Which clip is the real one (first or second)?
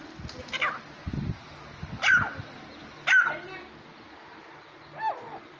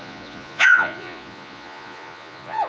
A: first